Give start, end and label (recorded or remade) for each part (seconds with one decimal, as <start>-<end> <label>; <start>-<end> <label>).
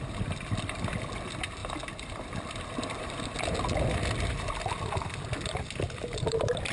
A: 0.0-6.7 recorded